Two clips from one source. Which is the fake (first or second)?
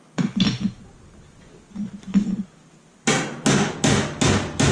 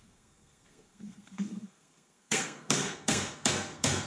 second